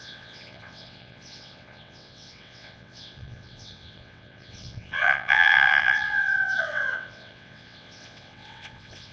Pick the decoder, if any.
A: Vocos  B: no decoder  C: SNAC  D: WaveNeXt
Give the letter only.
D